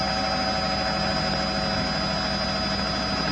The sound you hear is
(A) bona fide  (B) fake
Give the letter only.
A